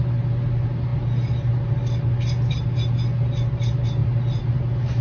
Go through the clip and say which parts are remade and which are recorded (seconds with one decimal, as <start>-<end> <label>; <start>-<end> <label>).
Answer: 0.0-5.0 recorded